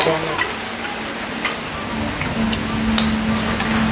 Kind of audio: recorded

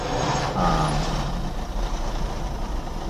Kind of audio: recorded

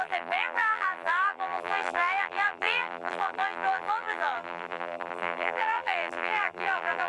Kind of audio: remade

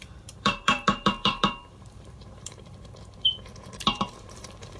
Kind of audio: remade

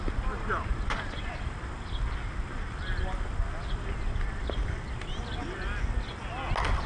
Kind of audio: recorded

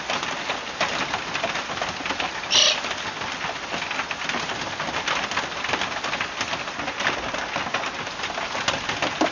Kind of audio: recorded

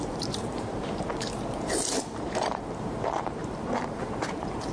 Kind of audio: remade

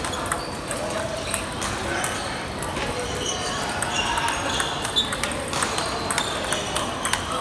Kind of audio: recorded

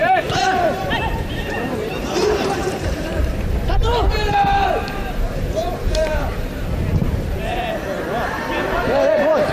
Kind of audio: remade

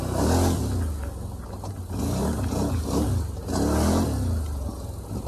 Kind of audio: recorded